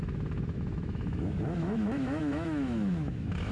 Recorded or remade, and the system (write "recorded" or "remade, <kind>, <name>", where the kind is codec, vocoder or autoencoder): remade, autoencoder, DAC-VAE